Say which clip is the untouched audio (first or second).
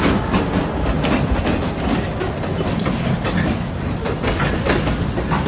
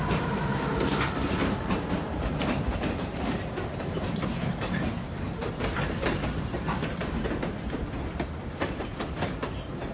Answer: first